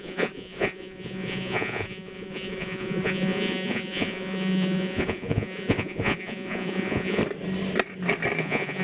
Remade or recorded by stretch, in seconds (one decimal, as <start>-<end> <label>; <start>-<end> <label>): 0.0-7.2 remade; 7.2-8.4 recorded; 8.4-8.8 remade

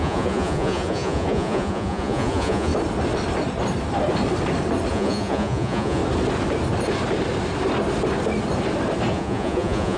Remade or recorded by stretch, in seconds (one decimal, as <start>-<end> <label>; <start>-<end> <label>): 0.0-2.7 remade; 2.7-4.9 recorded; 4.9-6.0 remade; 6.0-9.1 recorded; 9.1-10.0 remade

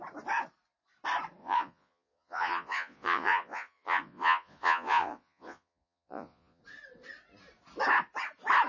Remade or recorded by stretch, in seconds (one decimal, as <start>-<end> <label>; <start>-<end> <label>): 0.0-1.4 recorded; 1.4-6.6 remade; 6.6-8.7 recorded

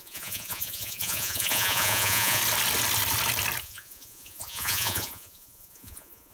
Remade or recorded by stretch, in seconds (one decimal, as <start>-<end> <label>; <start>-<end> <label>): 0.0-2.4 remade; 2.4-3.6 recorded; 3.6-6.3 remade

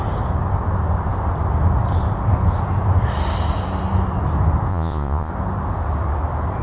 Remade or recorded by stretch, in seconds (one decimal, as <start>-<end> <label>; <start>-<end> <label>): 0.0-4.7 recorded; 4.7-5.3 remade; 5.3-6.6 recorded

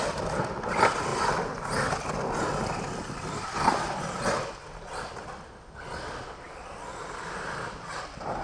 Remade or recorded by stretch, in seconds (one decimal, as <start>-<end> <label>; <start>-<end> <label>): 0.0-8.4 recorded

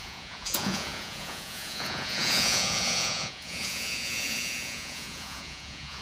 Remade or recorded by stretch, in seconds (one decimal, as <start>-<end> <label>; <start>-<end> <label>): 0.0-6.0 remade